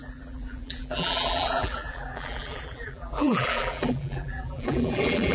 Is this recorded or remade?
remade